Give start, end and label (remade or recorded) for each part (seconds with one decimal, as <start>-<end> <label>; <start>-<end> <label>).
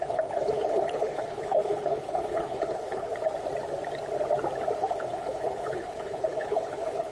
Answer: 0.0-3.1 remade; 3.1-4.8 recorded; 4.8-7.1 remade